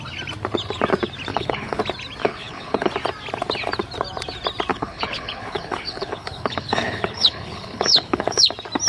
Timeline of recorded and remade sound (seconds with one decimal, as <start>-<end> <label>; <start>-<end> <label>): 0.0-1.3 recorded; 1.3-1.8 remade; 1.8-2.2 recorded; 2.2-2.9 remade; 2.9-4.7 recorded; 4.7-8.5 remade; 8.5-8.9 recorded